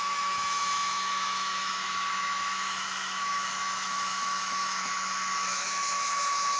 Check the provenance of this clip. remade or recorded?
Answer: remade